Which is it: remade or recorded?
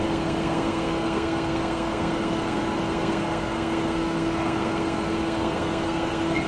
remade